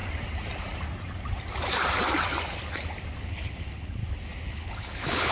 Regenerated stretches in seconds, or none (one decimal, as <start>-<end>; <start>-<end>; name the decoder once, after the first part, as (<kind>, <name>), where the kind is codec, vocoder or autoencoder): 3.2-4.0 (codec, HILCodec); 4.5-5.3